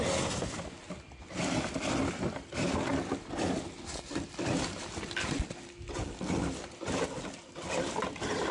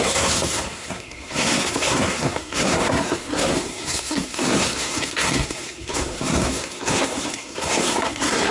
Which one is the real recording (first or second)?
first